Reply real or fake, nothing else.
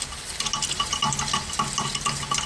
real